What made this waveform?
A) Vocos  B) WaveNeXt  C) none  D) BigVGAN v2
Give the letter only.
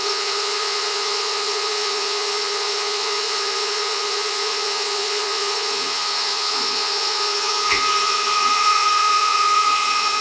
A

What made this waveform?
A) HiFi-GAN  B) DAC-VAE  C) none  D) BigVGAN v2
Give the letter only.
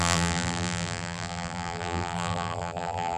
D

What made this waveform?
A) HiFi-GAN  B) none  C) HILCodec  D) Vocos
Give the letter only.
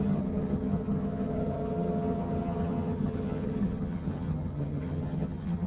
A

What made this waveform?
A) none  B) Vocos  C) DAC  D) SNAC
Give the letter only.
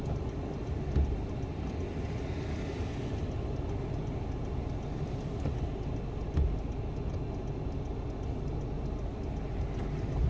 A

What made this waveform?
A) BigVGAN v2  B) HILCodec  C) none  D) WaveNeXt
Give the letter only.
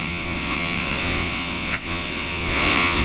D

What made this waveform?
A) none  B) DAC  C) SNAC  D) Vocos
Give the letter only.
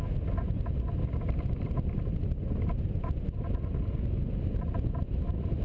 A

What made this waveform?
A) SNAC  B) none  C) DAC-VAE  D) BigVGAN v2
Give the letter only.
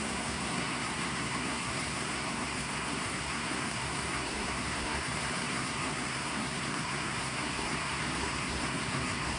A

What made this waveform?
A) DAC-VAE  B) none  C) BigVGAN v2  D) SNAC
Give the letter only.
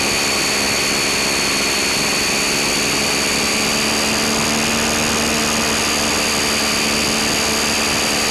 B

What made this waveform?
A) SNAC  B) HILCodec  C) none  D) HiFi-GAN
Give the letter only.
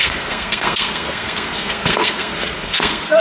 A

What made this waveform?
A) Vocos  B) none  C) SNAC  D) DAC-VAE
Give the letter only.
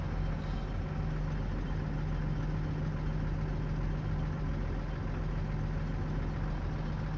B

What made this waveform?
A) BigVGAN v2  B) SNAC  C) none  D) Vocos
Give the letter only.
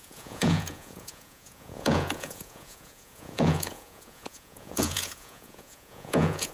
D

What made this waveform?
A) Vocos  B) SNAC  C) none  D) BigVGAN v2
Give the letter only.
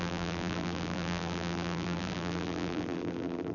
D